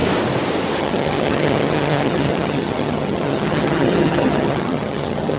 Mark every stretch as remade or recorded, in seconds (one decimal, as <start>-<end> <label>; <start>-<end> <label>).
0.0-0.8 recorded; 0.8-5.4 remade